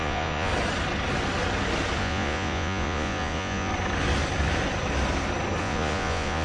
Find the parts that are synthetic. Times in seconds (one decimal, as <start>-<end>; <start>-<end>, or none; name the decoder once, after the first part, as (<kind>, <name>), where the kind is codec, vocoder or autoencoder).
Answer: 0.0-0.5 (vocoder, Vocos); 2.0-3.7; 5.6-6.4